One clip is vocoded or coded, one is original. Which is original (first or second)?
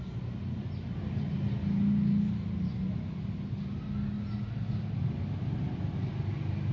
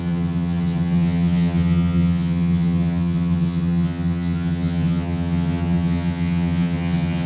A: first